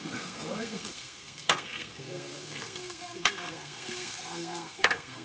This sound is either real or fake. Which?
fake